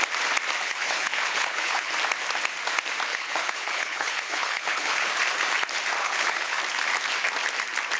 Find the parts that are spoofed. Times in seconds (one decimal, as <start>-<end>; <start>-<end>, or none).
0.6-1.9; 3.1-5.1; 6.0-6.6